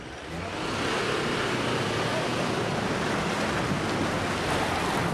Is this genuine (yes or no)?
no